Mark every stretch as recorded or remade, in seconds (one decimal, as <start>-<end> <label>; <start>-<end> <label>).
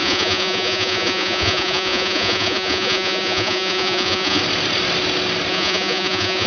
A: 0.0-4.4 remade; 4.4-5.5 recorded; 5.5-6.5 remade